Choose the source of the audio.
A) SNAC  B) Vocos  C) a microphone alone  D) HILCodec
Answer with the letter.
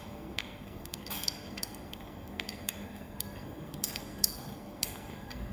A